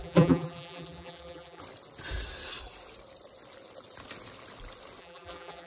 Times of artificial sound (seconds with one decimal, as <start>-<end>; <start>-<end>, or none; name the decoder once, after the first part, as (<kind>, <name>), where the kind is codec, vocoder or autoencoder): 0.0-1.6 (vocoder, BigVGAN v2); 5.0-5.7